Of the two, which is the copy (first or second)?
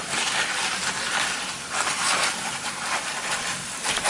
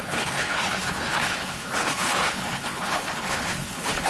second